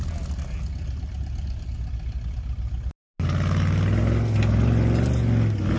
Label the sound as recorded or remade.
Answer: recorded